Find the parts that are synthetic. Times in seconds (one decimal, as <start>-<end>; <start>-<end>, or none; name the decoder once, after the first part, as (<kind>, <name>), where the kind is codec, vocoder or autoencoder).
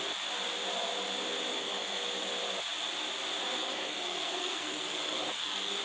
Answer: 1.5-2.0 (codec, SNAC); 3.6-5.8